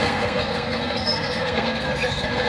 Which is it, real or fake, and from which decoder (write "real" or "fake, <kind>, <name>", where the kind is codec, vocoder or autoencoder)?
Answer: fake, codec, SNAC